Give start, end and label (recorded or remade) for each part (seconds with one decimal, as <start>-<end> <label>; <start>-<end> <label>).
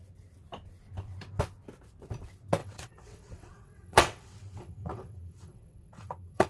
0.0-2.6 recorded; 2.6-6.5 remade